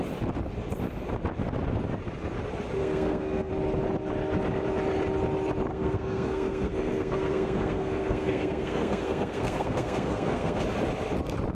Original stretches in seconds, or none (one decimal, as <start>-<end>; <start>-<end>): 0.0-2.8; 3.5-5.7; 10.6-11.5